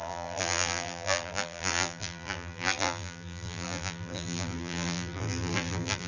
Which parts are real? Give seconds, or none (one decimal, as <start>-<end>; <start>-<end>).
none